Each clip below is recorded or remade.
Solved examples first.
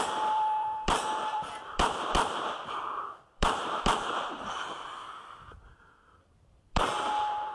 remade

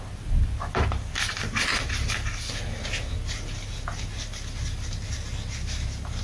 recorded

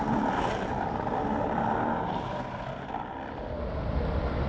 recorded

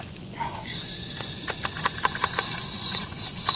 remade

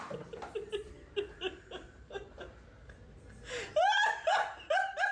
recorded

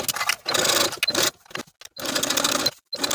recorded